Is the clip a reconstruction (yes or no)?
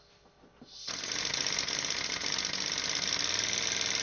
no